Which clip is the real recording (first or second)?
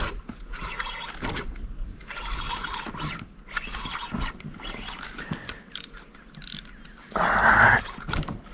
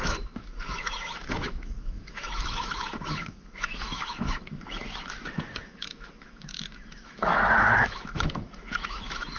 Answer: first